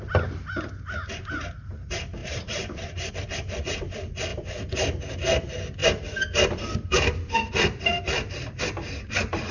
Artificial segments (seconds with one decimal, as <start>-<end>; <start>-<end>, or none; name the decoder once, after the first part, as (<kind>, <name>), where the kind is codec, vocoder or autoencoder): 2.2-3.1 (vocoder, BigVGAN v2)